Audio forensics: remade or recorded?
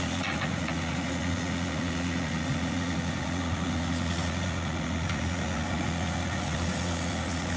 remade